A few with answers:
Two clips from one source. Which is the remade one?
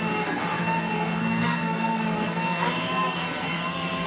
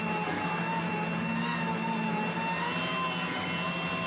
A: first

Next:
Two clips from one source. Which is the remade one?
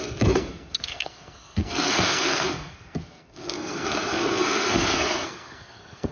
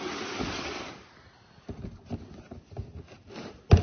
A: first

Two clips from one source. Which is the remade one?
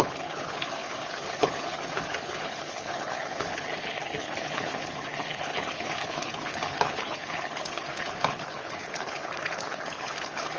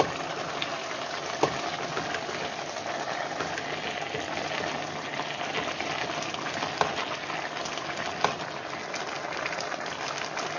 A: first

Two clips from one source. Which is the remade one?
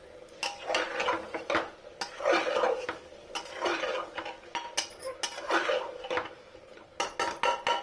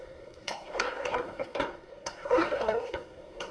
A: second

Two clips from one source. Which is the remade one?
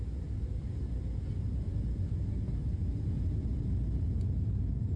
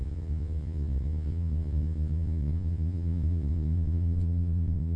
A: second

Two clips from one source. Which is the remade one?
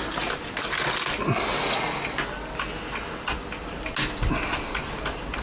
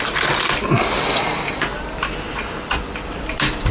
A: second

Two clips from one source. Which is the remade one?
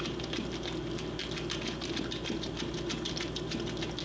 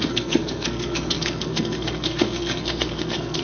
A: second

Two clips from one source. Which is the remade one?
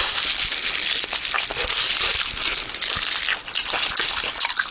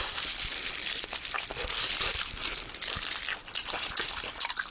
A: second